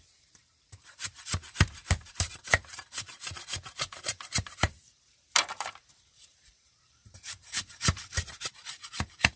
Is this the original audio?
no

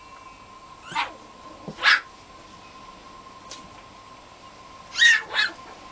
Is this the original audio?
yes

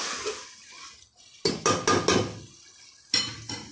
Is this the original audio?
yes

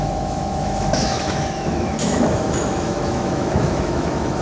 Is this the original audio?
no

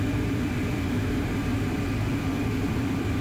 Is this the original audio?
no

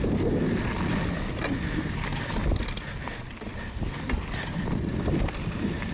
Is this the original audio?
yes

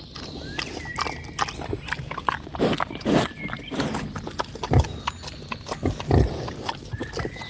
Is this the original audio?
yes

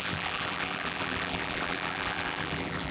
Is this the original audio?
no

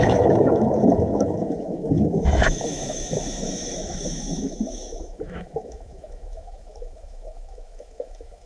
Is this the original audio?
no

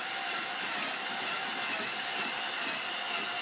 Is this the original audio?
yes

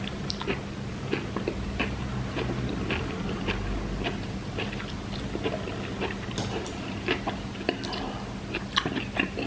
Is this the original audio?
yes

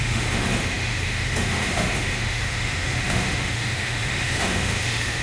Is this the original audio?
no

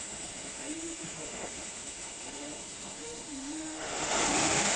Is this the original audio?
no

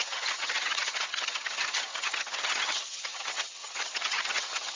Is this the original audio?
no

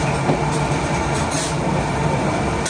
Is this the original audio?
no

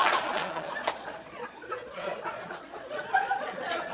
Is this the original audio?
no